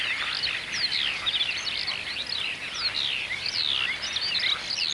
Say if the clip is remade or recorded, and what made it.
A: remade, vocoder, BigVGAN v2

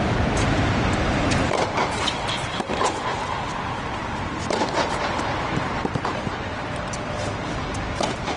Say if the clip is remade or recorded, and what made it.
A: remade, vocoder, BigVGAN v2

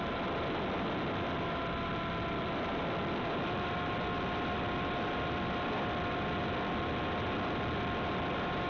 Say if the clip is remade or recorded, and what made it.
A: remade, vocoder, BigVGAN v2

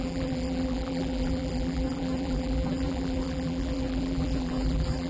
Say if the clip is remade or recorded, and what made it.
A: remade, vocoder, BigVGAN v2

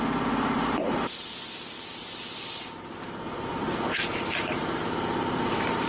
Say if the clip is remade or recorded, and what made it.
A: remade, vocoder, BigVGAN v2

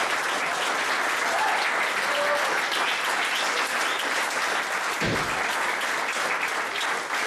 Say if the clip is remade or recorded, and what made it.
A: recorded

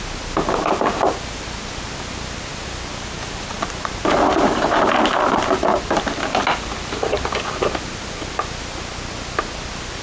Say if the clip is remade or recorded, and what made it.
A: recorded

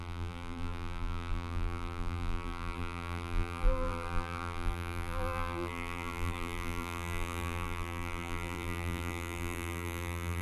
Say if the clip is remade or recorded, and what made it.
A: remade, vocoder, BigVGAN v2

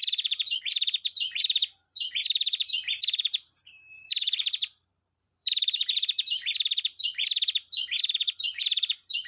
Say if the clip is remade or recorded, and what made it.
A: remade, vocoder, BigVGAN v2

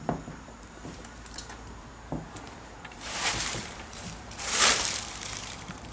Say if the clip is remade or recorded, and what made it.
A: remade, vocoder, BigVGAN v2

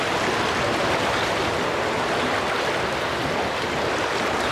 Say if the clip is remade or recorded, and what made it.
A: recorded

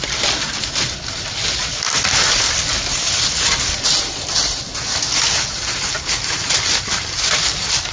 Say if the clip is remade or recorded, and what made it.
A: recorded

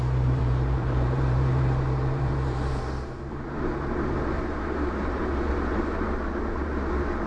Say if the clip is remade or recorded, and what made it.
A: remade, vocoder, BigVGAN v2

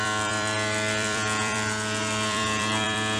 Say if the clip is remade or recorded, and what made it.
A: remade, vocoder, BigVGAN v2